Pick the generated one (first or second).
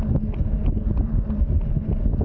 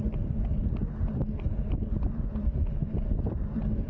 second